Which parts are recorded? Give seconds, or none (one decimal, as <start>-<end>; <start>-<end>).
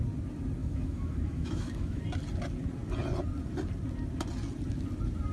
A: 0.0-0.6; 2.0-5.3